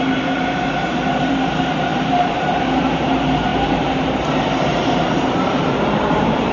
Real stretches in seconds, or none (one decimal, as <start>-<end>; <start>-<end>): none